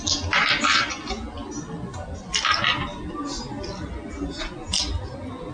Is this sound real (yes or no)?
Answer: yes